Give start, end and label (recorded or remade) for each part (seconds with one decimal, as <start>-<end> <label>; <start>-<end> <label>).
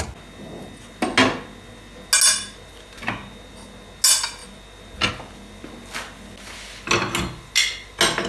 0.0-8.3 recorded